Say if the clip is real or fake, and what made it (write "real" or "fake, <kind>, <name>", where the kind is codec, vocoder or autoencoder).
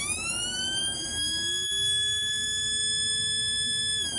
fake, autoencoder, DAC-VAE